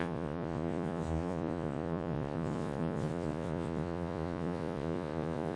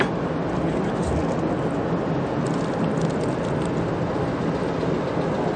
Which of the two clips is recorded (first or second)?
second